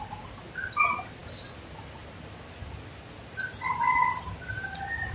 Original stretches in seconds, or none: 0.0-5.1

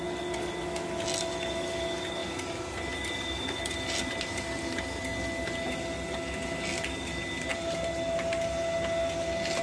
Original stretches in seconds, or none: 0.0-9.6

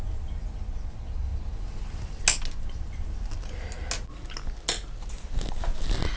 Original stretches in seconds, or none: 0.0-6.2

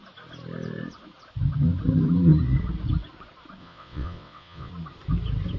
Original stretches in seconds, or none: 0.0-3.6; 4.7-5.6

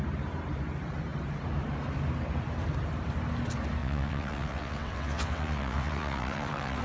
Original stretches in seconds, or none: 0.0-3.8